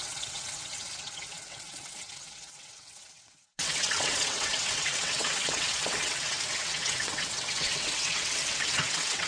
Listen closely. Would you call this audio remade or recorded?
remade